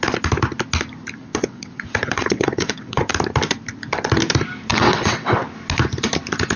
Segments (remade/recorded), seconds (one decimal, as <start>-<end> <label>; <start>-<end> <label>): 0.0-1.2 recorded; 1.2-3.1 remade; 3.1-4.7 recorded; 4.7-5.4 remade; 5.4-6.6 recorded